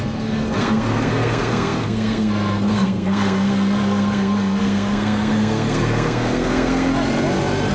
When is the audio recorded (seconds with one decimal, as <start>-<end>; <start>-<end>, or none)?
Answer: 6.9-7.7